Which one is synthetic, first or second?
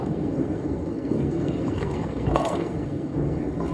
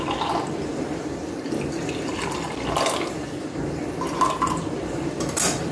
first